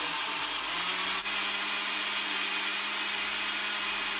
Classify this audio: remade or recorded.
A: recorded